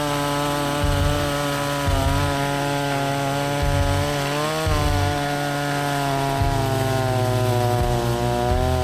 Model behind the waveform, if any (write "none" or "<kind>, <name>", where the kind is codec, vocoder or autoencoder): none